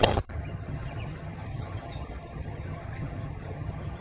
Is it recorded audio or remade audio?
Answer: remade